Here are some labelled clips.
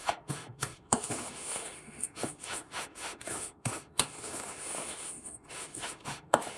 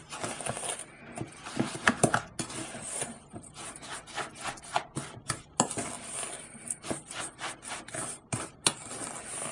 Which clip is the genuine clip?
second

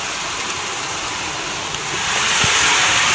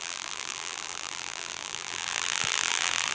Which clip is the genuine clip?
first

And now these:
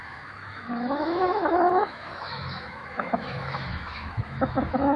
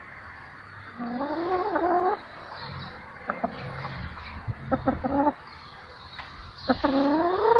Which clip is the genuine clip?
second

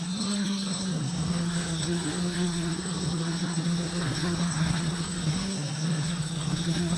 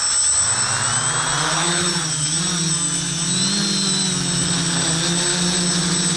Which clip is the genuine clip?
second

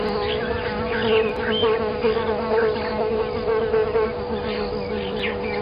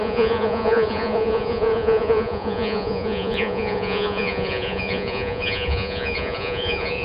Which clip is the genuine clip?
first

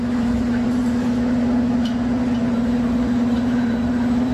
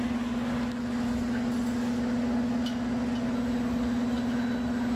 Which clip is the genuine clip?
second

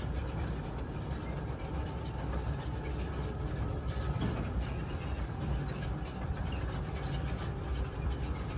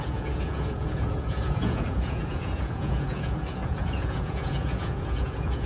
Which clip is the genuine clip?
first